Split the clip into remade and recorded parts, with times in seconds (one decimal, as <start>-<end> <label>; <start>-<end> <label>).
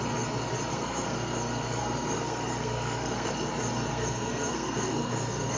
0.0-0.7 recorded; 0.7-3.3 remade; 3.3-3.9 recorded; 3.9-5.6 remade